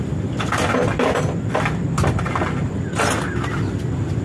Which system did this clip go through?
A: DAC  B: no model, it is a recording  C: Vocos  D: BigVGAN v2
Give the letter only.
B